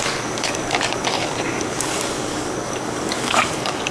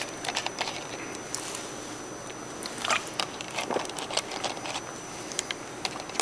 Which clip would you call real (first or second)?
second